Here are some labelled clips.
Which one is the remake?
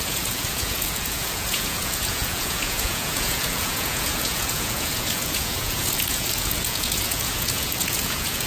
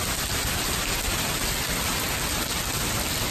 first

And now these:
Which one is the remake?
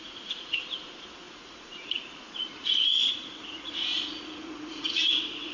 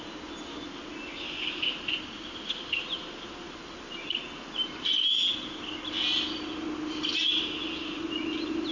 first